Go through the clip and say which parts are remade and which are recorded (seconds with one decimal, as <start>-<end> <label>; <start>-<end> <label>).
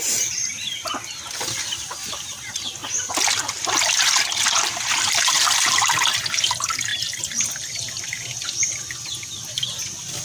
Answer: 0.0-2.8 remade; 2.8-4.4 recorded; 4.4-10.2 remade